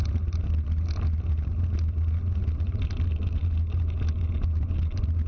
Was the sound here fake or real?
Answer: real